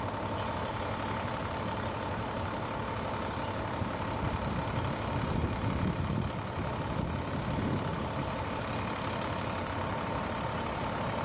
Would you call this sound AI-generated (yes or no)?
no